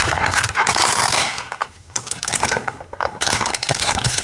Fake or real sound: fake